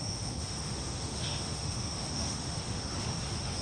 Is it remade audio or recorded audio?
remade